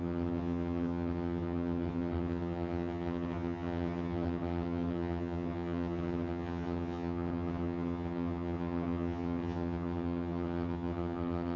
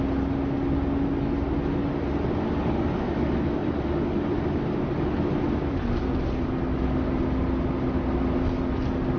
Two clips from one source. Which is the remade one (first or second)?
first